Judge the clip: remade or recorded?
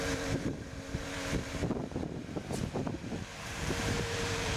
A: remade